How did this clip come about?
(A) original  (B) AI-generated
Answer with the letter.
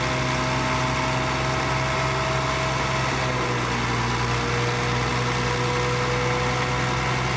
A